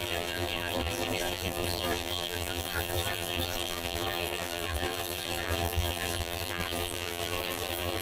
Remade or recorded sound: remade